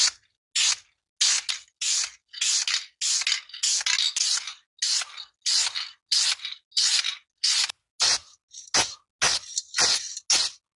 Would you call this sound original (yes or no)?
yes